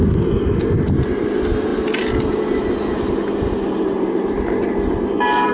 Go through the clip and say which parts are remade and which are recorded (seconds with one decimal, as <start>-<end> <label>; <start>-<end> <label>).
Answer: 0.0-5.5 recorded